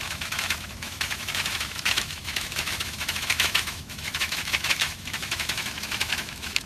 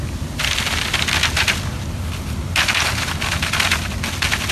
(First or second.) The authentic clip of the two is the second